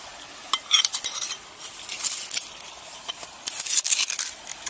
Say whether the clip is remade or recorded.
recorded